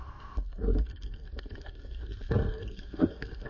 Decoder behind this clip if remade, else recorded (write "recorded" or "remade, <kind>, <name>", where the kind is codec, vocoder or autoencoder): remade, codec, SNAC